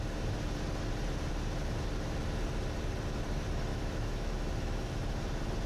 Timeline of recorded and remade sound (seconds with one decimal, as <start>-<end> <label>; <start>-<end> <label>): 0.0-3.7 recorded; 3.7-5.0 remade; 5.0-5.7 recorded